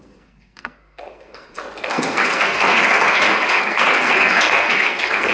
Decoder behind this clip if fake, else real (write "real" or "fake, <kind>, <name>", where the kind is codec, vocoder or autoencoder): fake, codec, SNAC